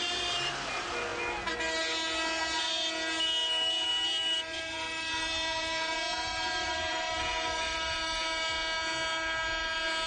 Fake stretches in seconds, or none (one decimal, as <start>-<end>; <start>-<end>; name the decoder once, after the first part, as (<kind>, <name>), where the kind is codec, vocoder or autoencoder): 3.4-8.2 (vocoder, BigVGAN v2)